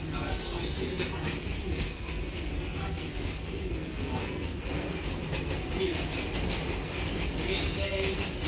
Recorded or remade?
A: remade